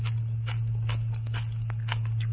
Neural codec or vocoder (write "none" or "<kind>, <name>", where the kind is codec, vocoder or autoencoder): none